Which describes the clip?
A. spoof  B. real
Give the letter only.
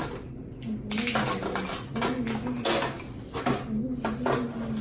B